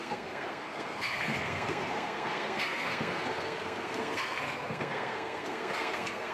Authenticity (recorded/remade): remade